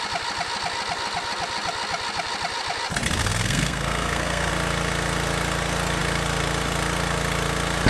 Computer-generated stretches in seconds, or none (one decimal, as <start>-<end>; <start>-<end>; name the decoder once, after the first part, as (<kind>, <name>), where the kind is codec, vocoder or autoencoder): 3.2-4.5 (codec, SNAC)